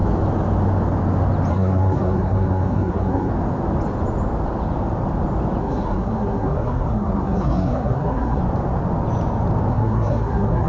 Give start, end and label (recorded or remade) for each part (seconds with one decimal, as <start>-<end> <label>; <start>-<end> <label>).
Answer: 0.0-1.5 recorded; 1.5-3.3 remade; 3.3-5.6 recorded; 5.6-8.4 remade; 8.4-9.7 recorded; 9.7-10.7 remade